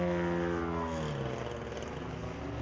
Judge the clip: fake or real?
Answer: real